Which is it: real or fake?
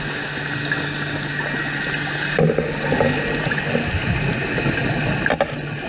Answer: real